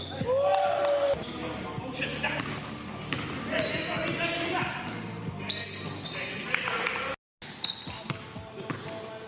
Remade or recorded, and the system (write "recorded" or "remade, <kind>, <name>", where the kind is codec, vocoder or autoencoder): recorded